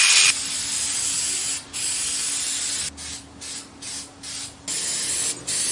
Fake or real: real